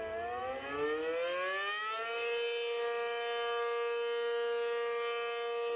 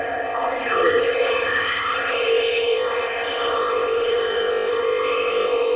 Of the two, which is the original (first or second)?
first